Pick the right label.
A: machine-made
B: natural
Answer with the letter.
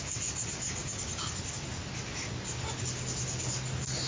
B